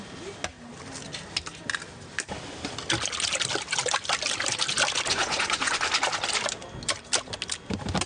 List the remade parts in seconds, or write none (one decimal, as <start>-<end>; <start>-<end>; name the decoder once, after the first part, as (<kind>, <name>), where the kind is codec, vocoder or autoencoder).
5.1-5.8 (vocoder, Vocos)